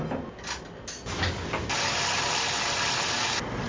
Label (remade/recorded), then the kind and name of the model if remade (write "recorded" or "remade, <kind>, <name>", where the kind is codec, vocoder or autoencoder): recorded